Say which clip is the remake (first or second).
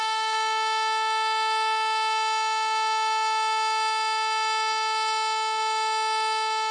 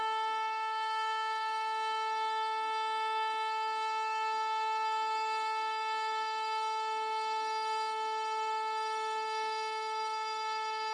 second